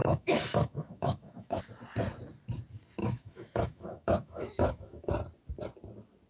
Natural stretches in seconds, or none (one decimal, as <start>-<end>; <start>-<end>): 1.6-3.0; 5.1-6.3